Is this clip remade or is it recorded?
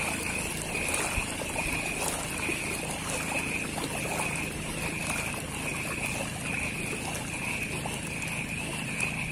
recorded